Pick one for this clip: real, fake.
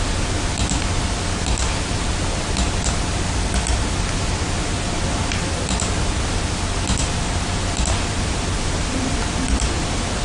real